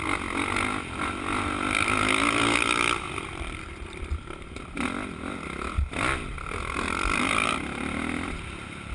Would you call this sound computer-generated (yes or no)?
yes